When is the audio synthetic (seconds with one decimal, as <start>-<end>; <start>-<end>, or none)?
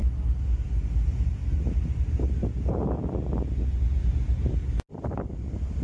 none